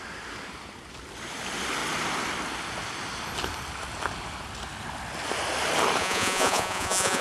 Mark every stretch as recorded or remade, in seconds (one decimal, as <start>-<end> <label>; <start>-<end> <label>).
0.0-6.0 recorded; 6.0-7.2 remade

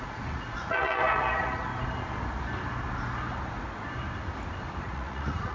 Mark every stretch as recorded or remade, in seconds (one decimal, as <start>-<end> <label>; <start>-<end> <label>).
0.0-1.7 remade; 1.7-4.8 recorded; 4.8-5.5 remade

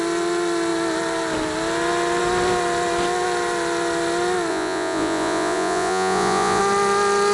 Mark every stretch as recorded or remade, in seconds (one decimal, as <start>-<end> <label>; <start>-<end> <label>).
0.0-4.5 recorded; 4.5-6.6 remade; 6.6-7.3 recorded

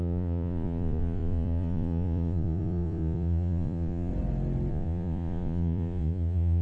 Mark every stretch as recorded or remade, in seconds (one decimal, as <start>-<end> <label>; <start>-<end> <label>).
0.0-4.1 remade; 4.1-4.7 recorded; 4.7-6.6 remade

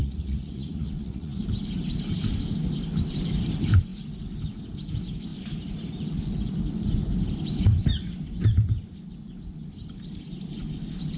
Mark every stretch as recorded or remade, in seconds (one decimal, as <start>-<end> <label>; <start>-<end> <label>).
0.0-1.4 remade; 1.4-11.2 recorded

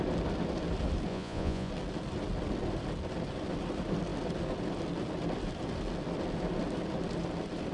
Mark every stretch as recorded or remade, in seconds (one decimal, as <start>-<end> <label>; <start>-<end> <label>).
0.0-1.1 recorded; 1.1-1.7 remade; 1.7-7.7 recorded